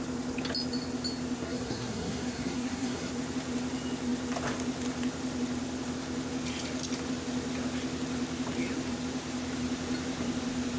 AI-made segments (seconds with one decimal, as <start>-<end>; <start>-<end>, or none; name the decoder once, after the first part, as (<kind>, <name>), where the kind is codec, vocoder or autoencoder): 1.4-3.1 (codec, SNAC)